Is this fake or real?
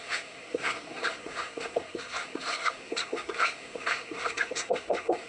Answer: fake